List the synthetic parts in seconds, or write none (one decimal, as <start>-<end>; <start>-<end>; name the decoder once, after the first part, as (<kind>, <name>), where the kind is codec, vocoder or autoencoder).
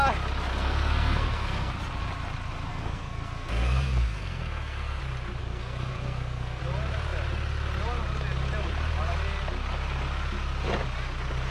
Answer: 0.5-1.7 (codec, SNAC); 2.7-5.0; 5.4-6.6